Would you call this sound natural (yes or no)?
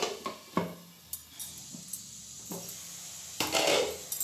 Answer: yes